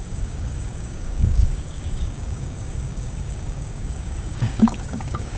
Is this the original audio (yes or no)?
no